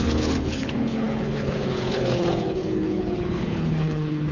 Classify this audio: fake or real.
fake